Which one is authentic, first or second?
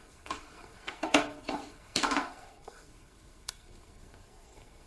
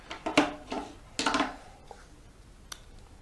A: second